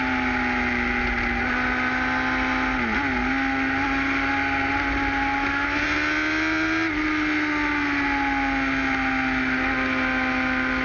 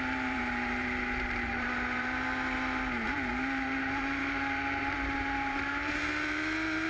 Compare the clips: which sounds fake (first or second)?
second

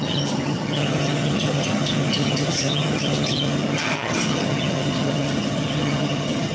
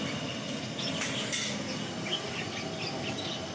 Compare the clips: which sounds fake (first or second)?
first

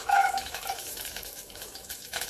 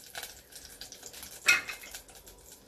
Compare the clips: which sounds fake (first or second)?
first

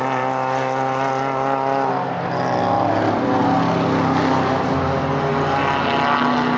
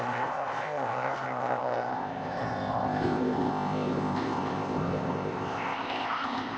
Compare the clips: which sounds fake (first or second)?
second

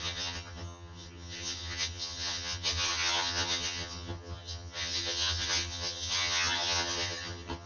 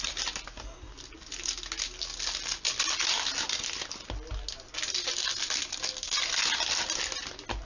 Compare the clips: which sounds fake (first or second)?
first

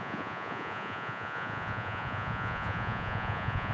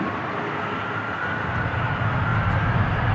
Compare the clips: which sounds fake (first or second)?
first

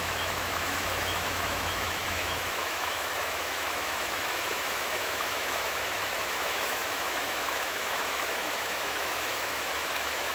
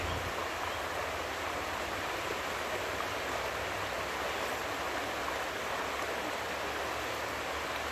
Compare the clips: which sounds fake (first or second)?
first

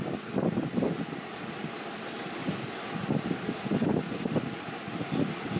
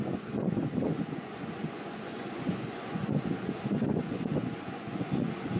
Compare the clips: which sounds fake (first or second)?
second